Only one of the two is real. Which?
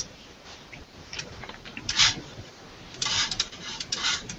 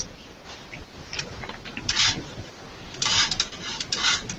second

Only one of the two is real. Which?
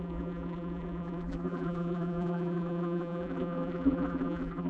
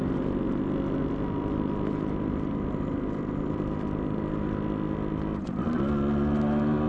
second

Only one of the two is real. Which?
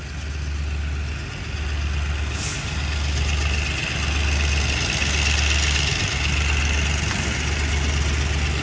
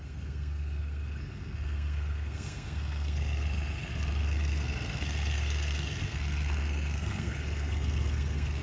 first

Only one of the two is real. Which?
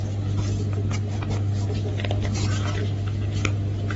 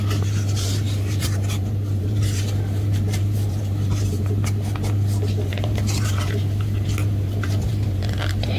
first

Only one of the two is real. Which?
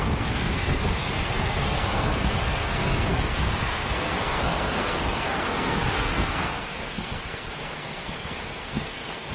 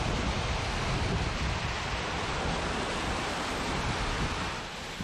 second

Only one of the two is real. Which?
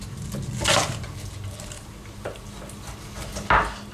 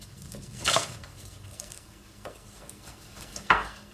first